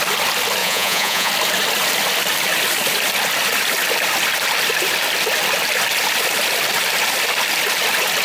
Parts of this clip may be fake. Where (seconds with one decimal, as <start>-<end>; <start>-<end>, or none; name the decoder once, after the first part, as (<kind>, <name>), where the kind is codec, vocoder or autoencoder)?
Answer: 0.6-1.3 (vocoder, Vocos)